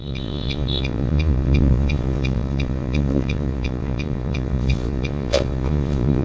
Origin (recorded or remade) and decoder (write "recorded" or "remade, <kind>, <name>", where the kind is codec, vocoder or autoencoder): remade, vocoder, Vocos